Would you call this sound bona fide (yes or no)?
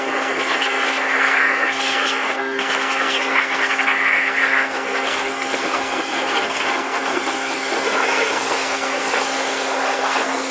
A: no